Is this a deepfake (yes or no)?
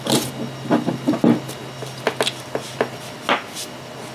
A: no